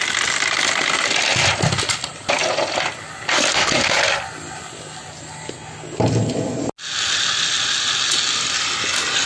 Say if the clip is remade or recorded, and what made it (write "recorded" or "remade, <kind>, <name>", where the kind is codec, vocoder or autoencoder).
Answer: recorded